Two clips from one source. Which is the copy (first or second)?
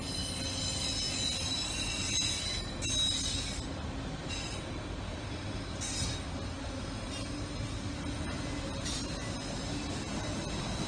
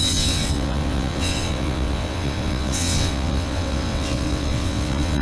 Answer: second